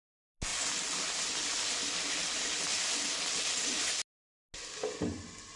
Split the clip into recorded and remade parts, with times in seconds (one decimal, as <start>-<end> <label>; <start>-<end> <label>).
0.0-5.6 recorded